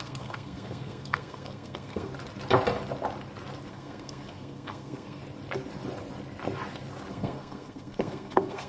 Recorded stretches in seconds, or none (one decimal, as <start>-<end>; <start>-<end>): 2.1-3.7; 5.2-7.1